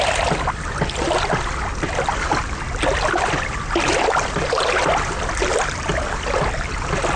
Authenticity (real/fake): real